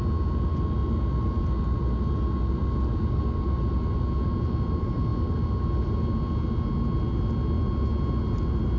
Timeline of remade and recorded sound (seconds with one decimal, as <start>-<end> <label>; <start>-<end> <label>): 0.0-8.8 recorded